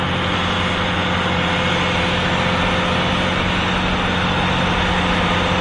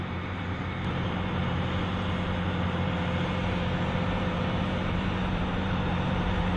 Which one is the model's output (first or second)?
second